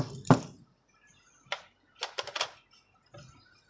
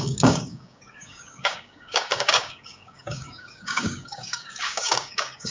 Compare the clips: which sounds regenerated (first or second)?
second